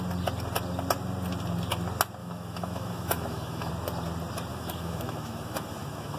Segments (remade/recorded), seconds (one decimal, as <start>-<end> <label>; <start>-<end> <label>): 0.0-2.2 recorded; 2.2-3.7 remade; 3.7-4.5 recorded; 4.5-6.2 remade